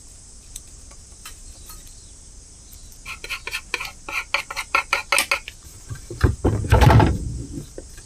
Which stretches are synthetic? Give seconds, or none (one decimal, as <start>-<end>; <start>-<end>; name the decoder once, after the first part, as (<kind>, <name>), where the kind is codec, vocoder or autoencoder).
0.0-2.8 (vocoder, BigVGAN v2); 4.4-5.0; 5.6-8.1